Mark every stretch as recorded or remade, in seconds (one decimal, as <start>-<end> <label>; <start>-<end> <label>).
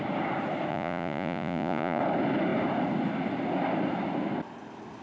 0.0-0.7 recorded; 0.7-2.0 remade; 2.0-5.0 recorded